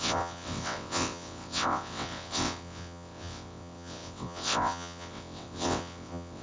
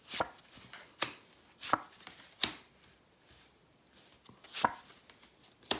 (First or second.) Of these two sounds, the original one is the second